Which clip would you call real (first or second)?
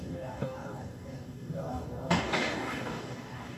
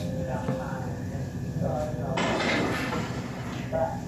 second